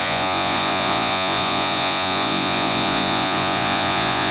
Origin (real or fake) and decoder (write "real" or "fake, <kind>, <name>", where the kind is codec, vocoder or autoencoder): fake, vocoder, Vocos